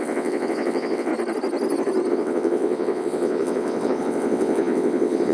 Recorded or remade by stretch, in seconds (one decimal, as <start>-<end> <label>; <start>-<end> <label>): 0.0-1.1 remade; 1.1-2.1 recorded; 2.1-5.3 remade